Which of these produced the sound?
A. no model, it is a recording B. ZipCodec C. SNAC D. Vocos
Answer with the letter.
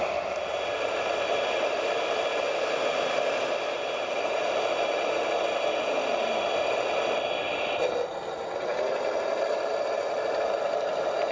A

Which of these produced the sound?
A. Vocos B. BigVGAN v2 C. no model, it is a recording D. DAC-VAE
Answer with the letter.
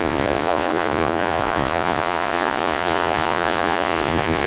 A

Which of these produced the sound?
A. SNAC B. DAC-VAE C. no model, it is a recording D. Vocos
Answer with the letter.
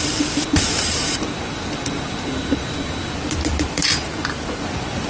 C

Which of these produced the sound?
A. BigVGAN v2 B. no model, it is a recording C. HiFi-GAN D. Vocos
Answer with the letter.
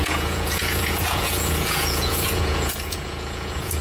D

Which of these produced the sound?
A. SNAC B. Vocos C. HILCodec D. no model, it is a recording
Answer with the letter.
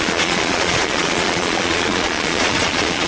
B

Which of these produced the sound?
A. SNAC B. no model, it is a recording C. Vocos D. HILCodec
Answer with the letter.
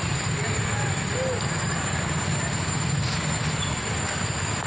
B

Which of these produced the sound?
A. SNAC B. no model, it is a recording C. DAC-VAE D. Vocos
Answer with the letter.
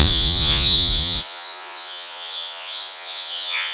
D